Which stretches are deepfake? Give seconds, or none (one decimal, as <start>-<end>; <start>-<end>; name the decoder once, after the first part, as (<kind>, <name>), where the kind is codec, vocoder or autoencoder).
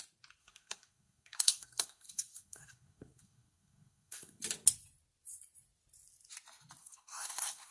0.4-4.4 (codec, SNAC); 6.8-7.7